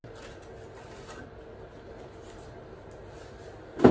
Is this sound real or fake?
real